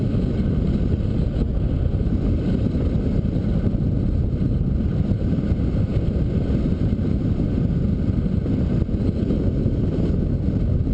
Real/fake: real